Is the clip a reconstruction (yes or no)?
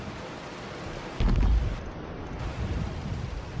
no